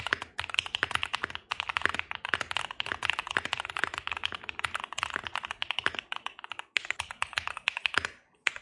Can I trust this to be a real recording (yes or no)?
yes